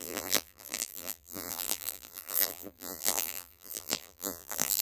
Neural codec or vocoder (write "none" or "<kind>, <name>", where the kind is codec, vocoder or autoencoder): vocoder, BigVGAN v2